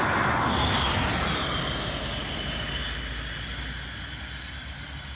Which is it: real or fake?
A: real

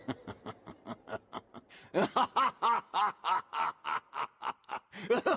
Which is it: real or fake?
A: real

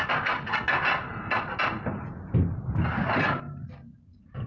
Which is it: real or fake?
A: real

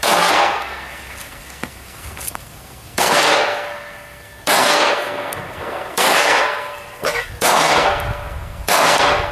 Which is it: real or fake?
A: fake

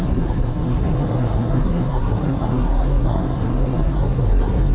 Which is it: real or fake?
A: fake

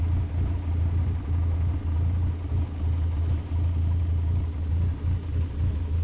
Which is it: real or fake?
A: real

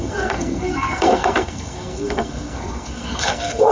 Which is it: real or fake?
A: fake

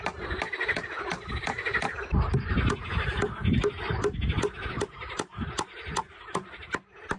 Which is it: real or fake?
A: real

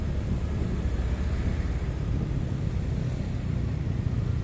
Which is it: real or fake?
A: real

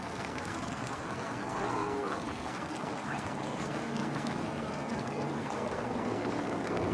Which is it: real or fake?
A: fake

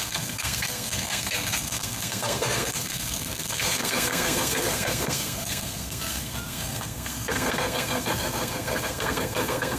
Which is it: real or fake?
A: fake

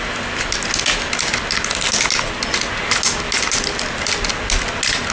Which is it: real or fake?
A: real